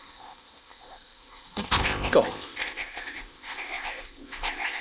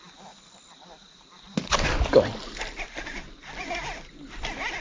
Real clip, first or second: second